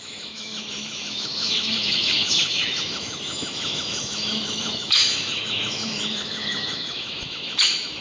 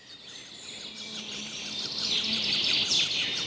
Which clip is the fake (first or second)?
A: first